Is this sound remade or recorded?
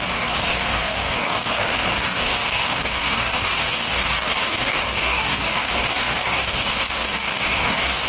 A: remade